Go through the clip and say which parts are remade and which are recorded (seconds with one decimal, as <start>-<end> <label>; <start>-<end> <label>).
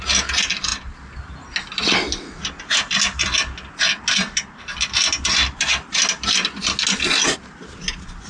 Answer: 0.0-8.3 recorded